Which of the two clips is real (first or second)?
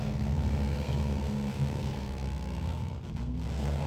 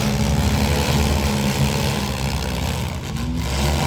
second